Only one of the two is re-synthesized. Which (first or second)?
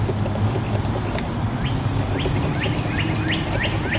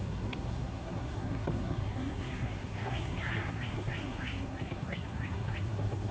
second